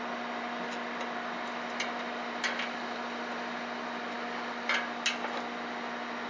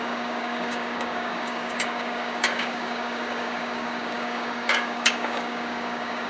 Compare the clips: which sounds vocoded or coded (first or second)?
second